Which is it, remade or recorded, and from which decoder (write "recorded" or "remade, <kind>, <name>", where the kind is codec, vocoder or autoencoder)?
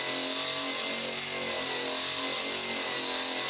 recorded